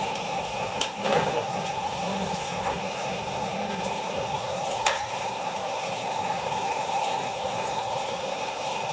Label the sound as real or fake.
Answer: fake